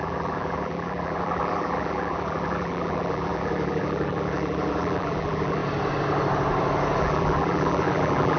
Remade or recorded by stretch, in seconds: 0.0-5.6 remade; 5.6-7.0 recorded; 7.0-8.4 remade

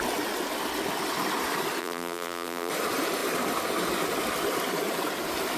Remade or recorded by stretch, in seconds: 0.0-1.8 recorded; 1.8-2.7 remade; 2.7-5.6 recorded

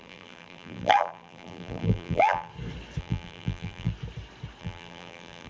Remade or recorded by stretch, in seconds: 0.0-2.5 remade; 2.5-3.0 recorded; 3.0-3.9 remade; 3.9-4.6 recorded; 4.6-5.5 remade

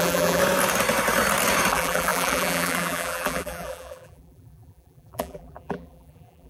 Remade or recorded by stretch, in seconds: 0.0-0.4 remade; 0.4-1.7 recorded; 1.7-6.5 remade

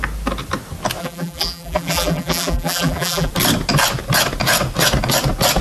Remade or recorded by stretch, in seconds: 0.0-1.0 recorded; 1.0-3.3 remade; 3.3-5.6 recorded

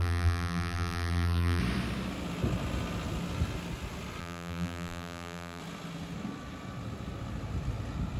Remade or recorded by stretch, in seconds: 0.0-1.6 remade; 1.6-4.2 recorded; 4.2-5.6 remade; 5.6-8.2 recorded